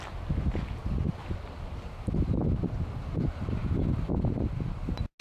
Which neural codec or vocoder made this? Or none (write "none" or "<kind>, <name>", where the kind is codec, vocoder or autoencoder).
none